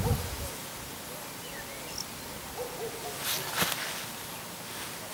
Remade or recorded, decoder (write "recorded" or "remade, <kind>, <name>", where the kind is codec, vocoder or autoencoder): recorded